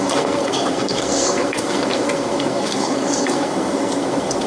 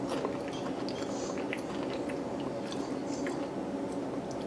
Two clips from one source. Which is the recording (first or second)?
second